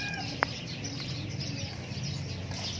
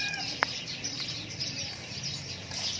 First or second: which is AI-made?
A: second